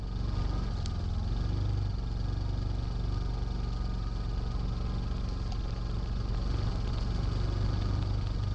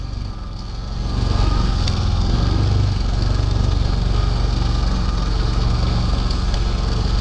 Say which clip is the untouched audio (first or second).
first